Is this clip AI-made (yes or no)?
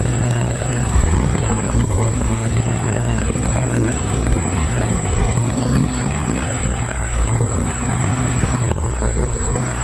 yes